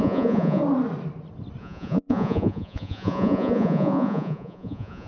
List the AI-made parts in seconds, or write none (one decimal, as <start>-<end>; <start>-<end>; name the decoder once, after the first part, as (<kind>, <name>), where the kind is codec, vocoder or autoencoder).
0.0-0.6 (vocoder, Vocos); 1.6-5.1